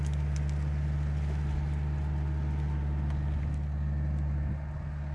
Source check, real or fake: real